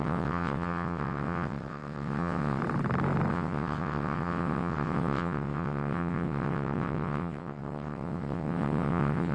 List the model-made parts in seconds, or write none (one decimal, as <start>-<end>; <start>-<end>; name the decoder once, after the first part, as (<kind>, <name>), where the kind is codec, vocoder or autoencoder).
0.0-2.6 (vocoder, WaveNeXt); 3.3-9.3